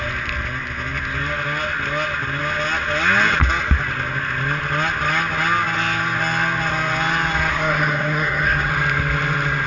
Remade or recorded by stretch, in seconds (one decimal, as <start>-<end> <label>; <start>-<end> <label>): 0.0-7.5 recorded; 7.5-8.7 remade; 8.7-9.7 recorded